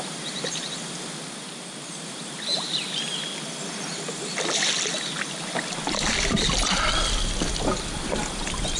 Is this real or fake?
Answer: real